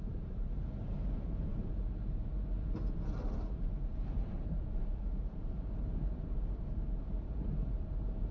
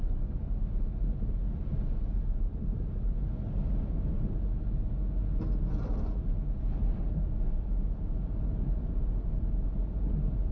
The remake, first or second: first